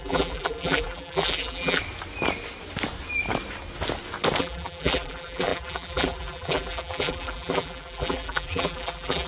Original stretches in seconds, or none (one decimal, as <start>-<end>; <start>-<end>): 1.8-4.4